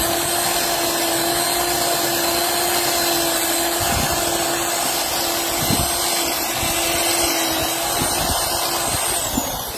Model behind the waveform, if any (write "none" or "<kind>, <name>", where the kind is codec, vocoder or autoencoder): none